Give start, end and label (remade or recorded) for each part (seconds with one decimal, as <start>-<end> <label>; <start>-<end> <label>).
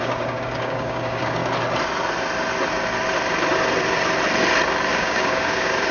0.0-1.4 remade; 1.4-4.9 recorded; 4.9-5.9 remade